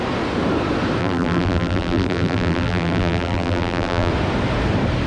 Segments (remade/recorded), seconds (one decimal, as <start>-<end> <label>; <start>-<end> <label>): 0.0-1.0 recorded; 1.0-4.1 remade; 4.1-5.1 recorded